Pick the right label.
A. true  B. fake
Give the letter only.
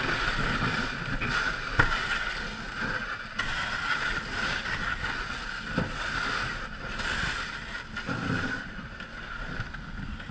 A